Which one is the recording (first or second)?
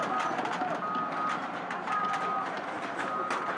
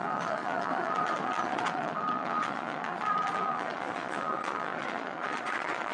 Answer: first